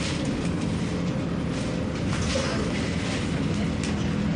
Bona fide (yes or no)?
yes